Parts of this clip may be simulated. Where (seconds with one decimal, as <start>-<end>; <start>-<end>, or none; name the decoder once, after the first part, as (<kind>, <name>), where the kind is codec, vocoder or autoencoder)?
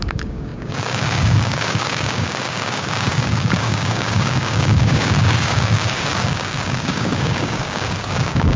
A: 0.0-8.6 (codec, DAC)